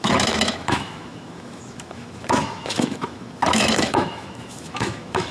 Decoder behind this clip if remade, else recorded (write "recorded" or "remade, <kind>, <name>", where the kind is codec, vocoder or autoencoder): remade, autoencoder, DAC-VAE